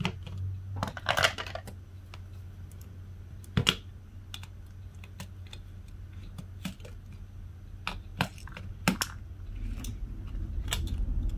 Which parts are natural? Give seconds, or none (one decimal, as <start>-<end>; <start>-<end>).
0.0-8.1; 8.7-9.9; 10.6-11.4

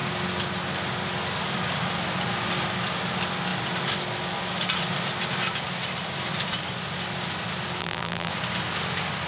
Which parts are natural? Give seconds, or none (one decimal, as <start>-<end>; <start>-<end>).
0.0-7.8; 8.3-9.3

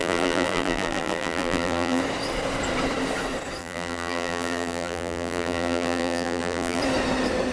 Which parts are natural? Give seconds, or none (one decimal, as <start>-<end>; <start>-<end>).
2.0-3.6; 6.8-7.5

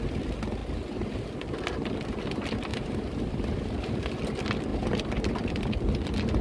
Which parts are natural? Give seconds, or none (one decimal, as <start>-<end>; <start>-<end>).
0.0-0.6; 1.4-2.7; 4.2-4.7; 5.6-6.4

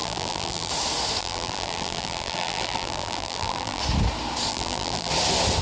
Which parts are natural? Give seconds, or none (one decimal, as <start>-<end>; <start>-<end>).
0.7-1.2; 3.8-4.5; 5.1-5.6

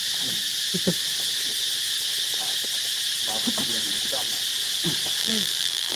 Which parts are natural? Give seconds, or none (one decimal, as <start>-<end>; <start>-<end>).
0.0-5.2

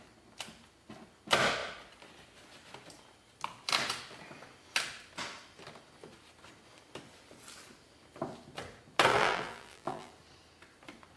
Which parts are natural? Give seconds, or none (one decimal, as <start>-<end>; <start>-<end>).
0.0-9.1; 10.1-11.2